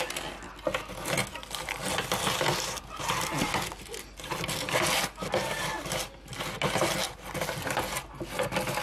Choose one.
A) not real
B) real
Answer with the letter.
B